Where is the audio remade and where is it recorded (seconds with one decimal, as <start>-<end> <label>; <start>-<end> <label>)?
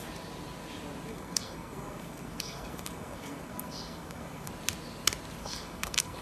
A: 0.0-1.1 recorded; 1.1-4.5 remade; 4.5-5.4 recorded; 5.4-6.2 remade